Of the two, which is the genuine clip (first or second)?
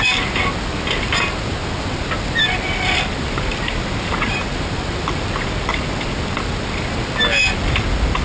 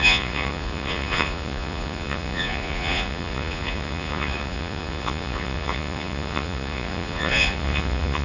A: first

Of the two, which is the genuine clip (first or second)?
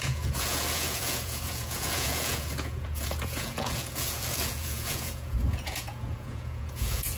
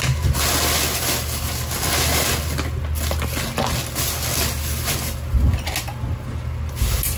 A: second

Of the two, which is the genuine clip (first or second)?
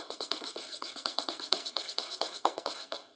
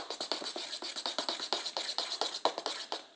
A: second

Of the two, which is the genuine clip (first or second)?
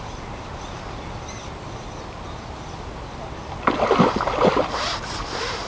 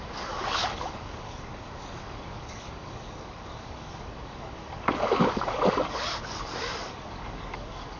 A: first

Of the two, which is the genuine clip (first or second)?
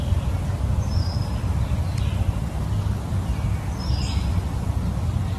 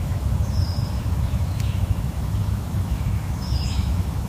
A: first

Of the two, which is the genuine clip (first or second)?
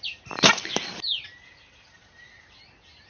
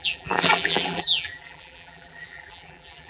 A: first